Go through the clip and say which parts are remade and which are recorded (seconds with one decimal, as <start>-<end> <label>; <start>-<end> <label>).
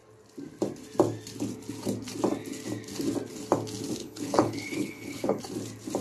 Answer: 0.0-4.0 recorded; 4.0-5.4 remade; 5.4-6.0 recorded